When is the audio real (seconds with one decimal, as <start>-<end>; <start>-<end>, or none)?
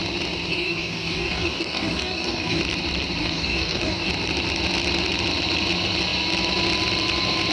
0.0-0.5; 2.6-3.2; 4.1-7.5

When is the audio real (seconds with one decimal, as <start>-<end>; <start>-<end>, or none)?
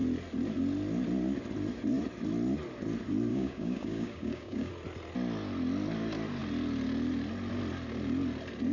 0.0-3.3; 4.7-8.7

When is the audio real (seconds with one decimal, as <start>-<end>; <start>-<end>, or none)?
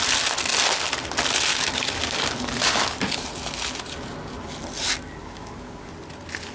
0.0-1.5; 3.3-5.2; 5.9-6.5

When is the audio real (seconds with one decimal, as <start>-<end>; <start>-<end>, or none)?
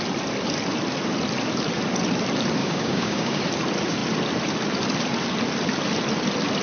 0.0-2.6; 3.4-6.6